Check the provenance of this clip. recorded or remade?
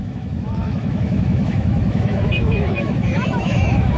remade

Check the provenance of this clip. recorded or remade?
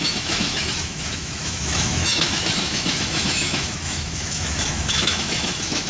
remade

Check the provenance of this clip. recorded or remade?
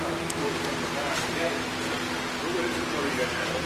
recorded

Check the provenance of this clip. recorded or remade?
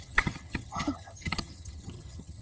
remade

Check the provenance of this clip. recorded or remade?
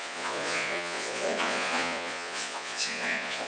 remade